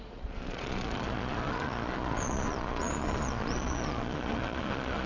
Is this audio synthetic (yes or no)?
yes